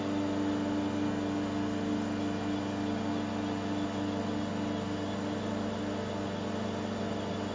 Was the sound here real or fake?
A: real